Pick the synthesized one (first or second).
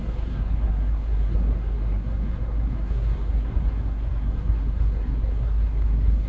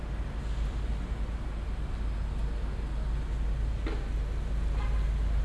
first